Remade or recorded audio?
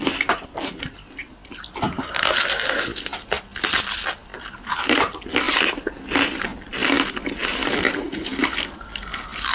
recorded